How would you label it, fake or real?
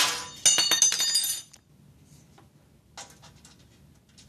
real